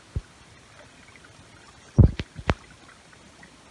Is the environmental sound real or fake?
real